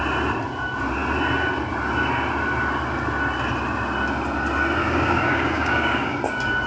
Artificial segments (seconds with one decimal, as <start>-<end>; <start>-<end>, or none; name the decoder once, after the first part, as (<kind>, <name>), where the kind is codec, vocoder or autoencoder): 4.8-6.2 (codec, DAC)